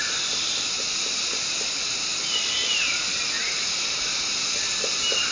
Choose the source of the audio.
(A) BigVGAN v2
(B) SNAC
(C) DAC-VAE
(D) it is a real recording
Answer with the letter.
D